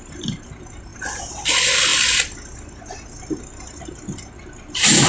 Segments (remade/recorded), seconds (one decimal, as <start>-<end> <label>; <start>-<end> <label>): 0.0-0.9 recorded; 0.9-1.4 remade; 1.4-5.1 recorded